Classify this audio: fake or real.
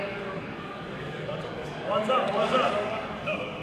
fake